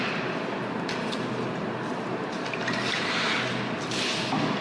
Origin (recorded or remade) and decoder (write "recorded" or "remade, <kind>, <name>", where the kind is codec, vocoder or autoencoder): recorded